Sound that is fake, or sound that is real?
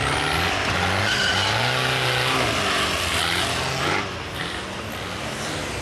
real